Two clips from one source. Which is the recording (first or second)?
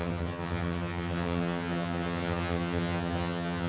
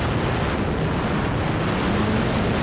second